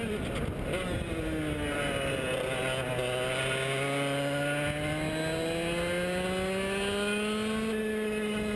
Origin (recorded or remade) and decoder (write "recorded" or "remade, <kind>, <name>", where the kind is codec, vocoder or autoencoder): recorded